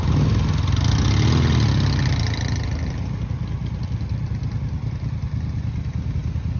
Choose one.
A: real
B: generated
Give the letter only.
A